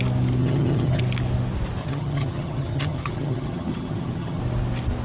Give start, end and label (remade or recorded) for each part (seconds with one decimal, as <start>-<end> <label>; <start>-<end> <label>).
0.0-0.4 recorded; 0.4-1.0 remade; 1.0-1.8 recorded; 1.8-4.4 remade; 4.4-5.0 recorded